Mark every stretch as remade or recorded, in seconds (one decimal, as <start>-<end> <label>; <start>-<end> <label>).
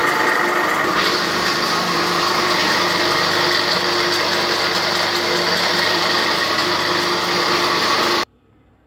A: 0.0-1.0 recorded; 1.0-2.6 remade; 2.6-5.6 recorded; 5.6-6.6 remade; 6.6-7.4 recorded; 7.4-8.9 remade